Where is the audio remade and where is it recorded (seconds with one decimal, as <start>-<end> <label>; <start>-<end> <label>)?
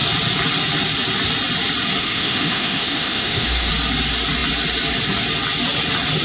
0.0-2.0 recorded; 2.0-3.7 remade; 3.7-6.2 recorded